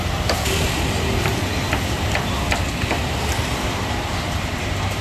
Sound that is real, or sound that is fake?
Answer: real